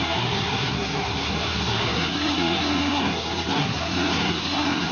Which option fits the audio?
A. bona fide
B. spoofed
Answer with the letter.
B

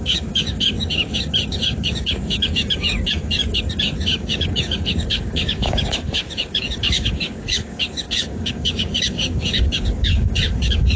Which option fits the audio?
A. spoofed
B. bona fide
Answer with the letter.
A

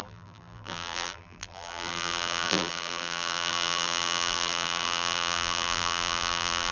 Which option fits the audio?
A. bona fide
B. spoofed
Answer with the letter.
B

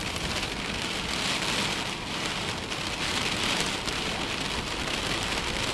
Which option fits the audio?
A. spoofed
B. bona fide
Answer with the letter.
B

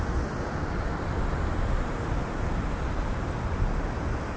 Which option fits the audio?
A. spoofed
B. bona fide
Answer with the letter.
B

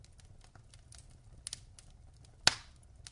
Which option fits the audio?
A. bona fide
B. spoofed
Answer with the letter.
A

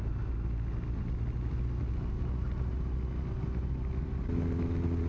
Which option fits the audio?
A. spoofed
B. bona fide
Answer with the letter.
B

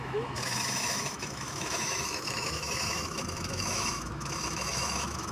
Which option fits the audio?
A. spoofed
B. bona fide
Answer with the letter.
A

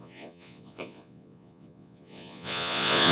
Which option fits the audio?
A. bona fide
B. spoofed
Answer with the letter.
B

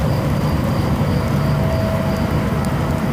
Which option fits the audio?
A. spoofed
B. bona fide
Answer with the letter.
B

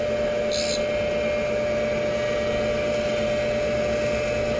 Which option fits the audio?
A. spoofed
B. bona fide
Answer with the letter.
B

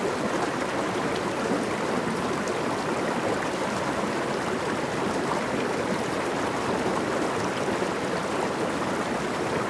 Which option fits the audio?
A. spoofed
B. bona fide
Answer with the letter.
B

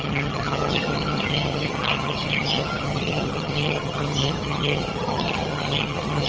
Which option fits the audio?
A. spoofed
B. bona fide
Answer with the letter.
A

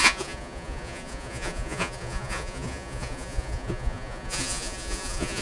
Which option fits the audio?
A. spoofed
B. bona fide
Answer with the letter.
A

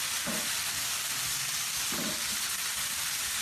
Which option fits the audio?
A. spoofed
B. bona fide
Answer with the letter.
B